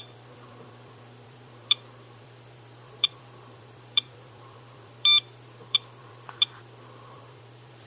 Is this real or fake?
fake